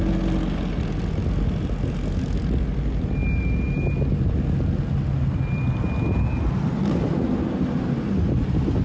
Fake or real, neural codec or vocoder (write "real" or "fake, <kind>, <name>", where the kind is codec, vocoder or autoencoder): real